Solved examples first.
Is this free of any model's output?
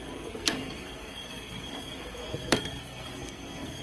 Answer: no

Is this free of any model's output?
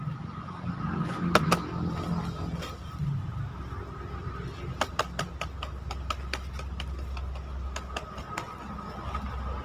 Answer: yes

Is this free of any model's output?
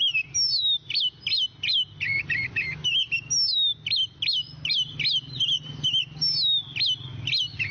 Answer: yes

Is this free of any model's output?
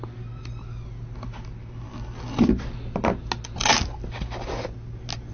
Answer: yes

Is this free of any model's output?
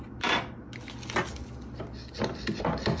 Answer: yes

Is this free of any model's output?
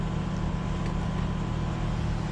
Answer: yes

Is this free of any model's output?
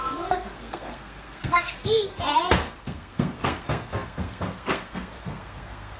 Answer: no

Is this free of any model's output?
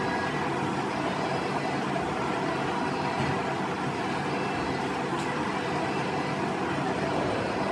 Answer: yes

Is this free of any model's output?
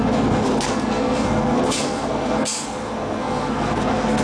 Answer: no